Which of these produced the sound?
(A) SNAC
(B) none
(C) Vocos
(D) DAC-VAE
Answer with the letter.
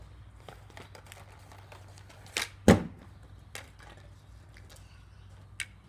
B